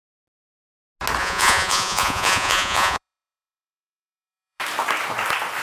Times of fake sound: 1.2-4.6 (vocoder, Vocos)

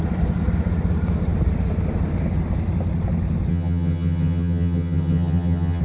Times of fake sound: 3.5-5.8 (vocoder, HiFi-GAN)

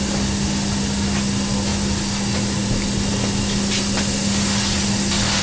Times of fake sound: none

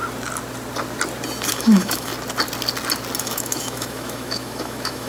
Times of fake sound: 1.5-2.1 (autoencoder, DAC-VAE); 3.2-5.1

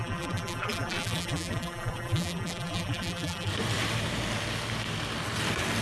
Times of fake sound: 0.0-3.5 (vocoder, BigVGAN v2)

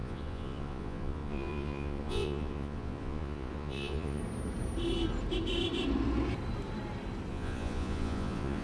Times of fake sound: 0.0-4.2 (vocoder, Vocos); 7.3-8.6

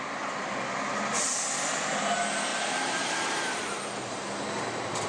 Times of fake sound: 2.5-3.8 (vocoder, BigVGAN v2)

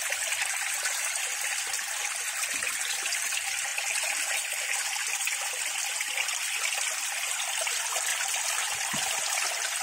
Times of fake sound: none